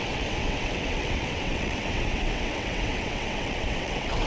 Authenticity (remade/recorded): remade